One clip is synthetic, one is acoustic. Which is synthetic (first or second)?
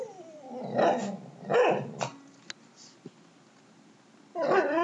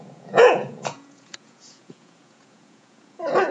second